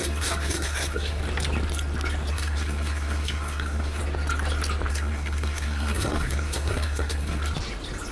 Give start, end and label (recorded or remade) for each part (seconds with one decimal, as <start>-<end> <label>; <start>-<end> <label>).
0.0-1.2 remade; 1.2-2.3 recorded; 2.3-4.0 remade; 4.0-4.9 recorded; 4.9-7.4 remade; 7.4-8.1 recorded